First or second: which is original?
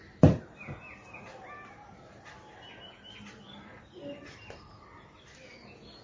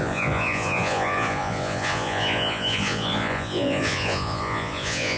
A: first